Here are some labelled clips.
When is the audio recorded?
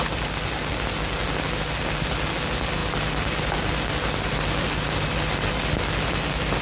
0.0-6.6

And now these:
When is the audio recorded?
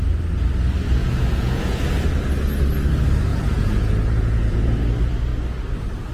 0.0-1.0; 1.8-3.3; 4.8-6.1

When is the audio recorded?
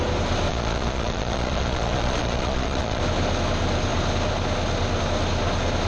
0.0-0.5; 3.0-5.9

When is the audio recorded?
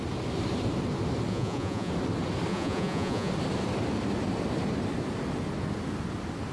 0.0-1.3; 1.9-2.5; 3.3-6.5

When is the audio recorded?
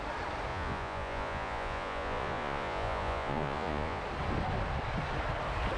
0.0-0.5; 4.0-5.8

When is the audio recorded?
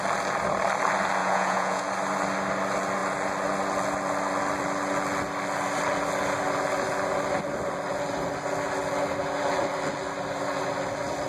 0.0-1.2; 1.8-11.3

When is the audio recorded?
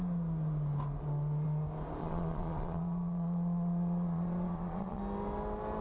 0.0-2.0; 5.0-5.8